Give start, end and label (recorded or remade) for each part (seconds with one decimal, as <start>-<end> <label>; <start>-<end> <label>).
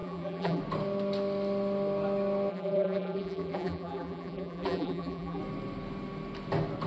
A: 0.0-0.6 remade; 0.6-2.5 recorded; 2.5-5.4 remade; 5.4-6.9 recorded